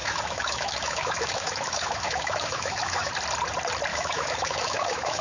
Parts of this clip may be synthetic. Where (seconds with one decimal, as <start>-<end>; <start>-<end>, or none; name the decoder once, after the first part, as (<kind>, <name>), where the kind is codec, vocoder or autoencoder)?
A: 0.0-3.1 (autoencoder, DAC-VAE); 3.9-5.2